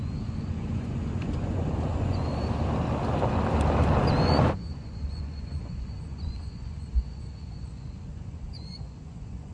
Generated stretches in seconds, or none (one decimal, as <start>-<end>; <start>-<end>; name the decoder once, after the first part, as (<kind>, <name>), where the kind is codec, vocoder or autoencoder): 0.0-2.3 (vocoder, Vocos); 4.2-9.5